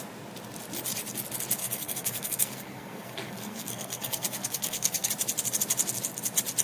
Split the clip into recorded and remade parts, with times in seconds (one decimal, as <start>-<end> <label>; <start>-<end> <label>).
0.0-1.6 recorded; 1.6-5.1 remade; 5.1-6.6 recorded